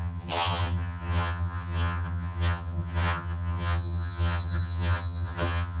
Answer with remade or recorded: remade